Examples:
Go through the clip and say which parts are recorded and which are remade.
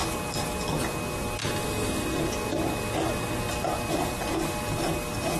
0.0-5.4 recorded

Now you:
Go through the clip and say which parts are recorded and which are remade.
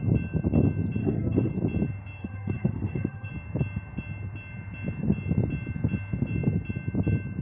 0.0-1.0 recorded; 1.0-1.5 remade; 1.5-2.2 recorded; 2.2-3.3 remade; 3.3-7.4 recorded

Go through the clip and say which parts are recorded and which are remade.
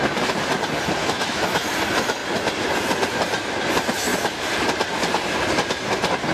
0.0-1.0 recorded; 1.0-1.6 remade; 1.6-6.3 recorded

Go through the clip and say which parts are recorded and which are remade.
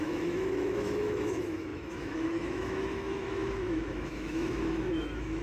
0.0-5.4 remade